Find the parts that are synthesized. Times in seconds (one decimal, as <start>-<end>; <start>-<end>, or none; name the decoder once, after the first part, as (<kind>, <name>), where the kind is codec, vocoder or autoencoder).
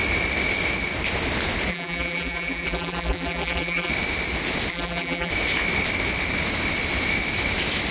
1.7-3.9 (vocoder, BigVGAN v2); 4.7-5.3